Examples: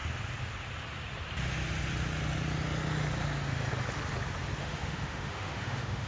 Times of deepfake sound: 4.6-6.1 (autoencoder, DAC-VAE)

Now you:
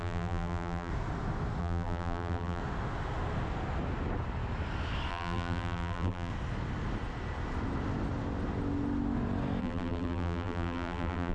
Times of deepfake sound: 0.0-0.9 (vocoder, BigVGAN v2); 1.6-2.6; 5.1-6.3; 9.6-11.3